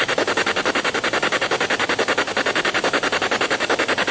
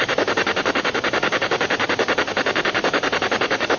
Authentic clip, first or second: first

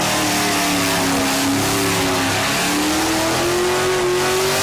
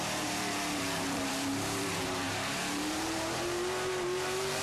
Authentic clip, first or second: first